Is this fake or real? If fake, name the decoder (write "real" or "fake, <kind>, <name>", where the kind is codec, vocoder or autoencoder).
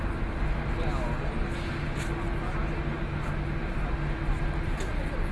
real